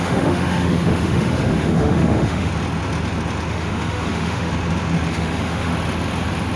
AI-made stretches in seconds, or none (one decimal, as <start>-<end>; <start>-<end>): 0.0-2.5; 3.5-4.5; 5.1-5.7